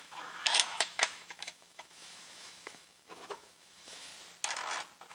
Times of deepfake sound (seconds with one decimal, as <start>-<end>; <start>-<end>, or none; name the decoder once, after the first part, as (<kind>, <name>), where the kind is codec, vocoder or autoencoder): 0.0-4.1 (autoencoder, DAC-VAE)